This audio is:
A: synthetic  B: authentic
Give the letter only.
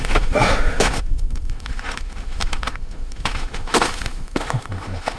A